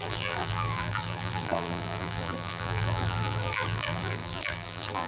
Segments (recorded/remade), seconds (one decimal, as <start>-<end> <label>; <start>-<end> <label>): 0.0-5.1 remade